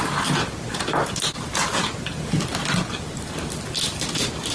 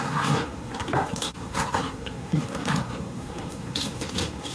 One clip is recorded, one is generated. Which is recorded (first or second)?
first